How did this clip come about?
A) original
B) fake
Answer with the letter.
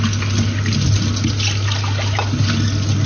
A